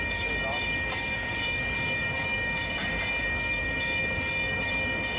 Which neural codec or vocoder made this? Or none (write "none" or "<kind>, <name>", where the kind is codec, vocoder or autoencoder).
codec, DAC